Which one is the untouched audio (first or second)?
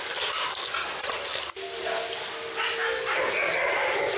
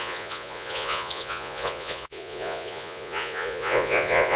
first